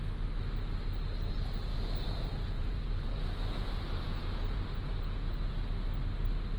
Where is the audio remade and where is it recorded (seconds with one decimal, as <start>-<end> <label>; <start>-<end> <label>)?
0.0-1.7 recorded; 1.7-5.7 remade; 5.7-6.6 recorded